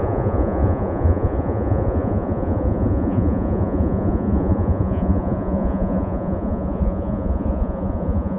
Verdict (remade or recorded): remade